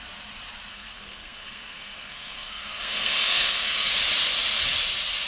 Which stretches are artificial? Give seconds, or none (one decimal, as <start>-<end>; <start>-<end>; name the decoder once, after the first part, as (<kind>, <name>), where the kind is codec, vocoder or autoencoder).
0.7-3.9 (codec, SNAC)